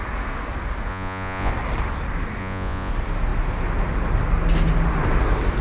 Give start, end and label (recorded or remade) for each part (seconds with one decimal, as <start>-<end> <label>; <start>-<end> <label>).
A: 0.0-0.9 recorded; 0.9-1.5 remade; 1.5-2.4 recorded; 2.4-2.9 remade; 2.9-5.6 recorded